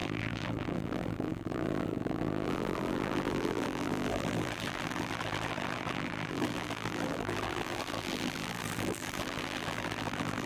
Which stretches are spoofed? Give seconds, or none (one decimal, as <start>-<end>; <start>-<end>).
0.0-10.5